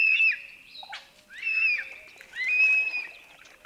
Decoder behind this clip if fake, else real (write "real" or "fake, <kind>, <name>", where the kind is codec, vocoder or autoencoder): real